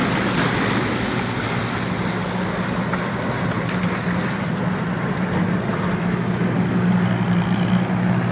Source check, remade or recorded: recorded